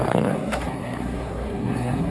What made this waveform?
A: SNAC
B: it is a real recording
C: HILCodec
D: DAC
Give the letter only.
A